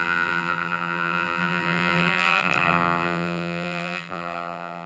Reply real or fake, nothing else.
fake